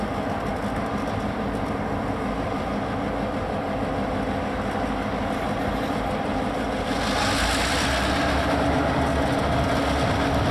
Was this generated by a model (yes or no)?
no